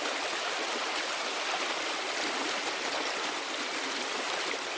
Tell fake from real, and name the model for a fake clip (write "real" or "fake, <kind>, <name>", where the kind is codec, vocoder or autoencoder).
real